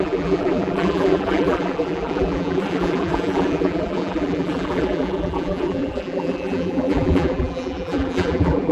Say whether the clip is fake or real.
fake